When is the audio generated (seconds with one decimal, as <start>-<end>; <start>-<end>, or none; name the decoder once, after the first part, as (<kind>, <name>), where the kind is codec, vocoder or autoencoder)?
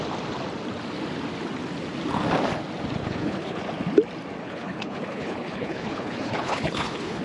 3.0-3.6 (codec, HILCodec); 4.4-7.2